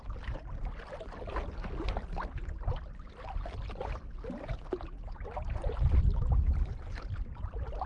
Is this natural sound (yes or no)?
yes